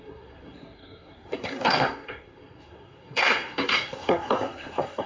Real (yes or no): no